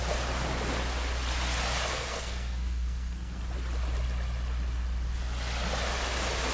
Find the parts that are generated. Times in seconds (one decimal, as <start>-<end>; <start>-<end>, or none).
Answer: 1.9-3.4